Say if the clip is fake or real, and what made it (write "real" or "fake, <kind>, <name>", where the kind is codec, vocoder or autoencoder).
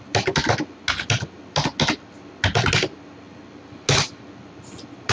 real